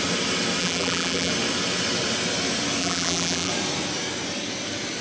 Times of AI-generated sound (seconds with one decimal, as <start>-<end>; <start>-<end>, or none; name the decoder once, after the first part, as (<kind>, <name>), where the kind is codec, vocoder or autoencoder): 0.6-1.3 (vocoder, BigVGAN v2); 2.8-3.5